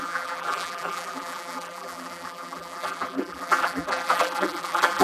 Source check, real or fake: fake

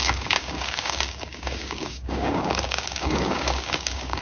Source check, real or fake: fake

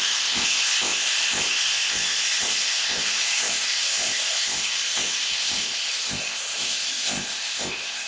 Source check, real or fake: fake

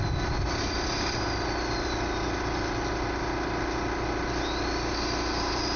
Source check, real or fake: real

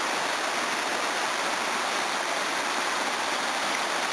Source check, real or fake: real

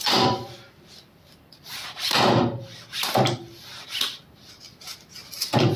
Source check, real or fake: fake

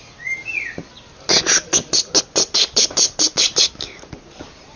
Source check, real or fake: real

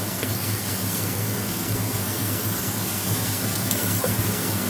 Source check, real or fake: fake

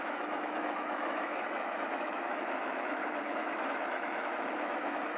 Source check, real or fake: fake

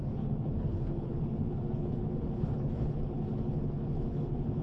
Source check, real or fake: fake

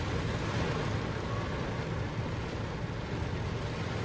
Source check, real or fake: real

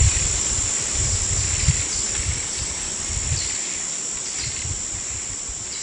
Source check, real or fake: real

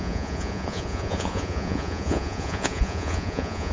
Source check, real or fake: fake